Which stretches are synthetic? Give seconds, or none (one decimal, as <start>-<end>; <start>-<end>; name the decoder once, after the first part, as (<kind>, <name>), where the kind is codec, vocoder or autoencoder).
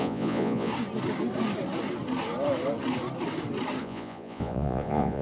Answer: 0.0-0.7 (vocoder, Vocos); 3.8-5.2